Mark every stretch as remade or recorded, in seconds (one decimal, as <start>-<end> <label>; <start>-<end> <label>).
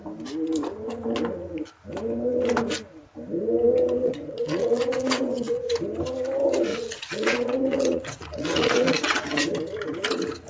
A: 0.0-4.0 recorded; 4.0-5.7 remade; 5.7-6.7 recorded; 6.7-9.4 remade; 9.4-10.5 recorded